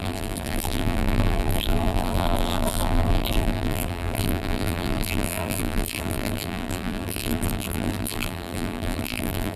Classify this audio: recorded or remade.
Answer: remade